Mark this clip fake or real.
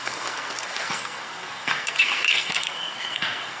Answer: fake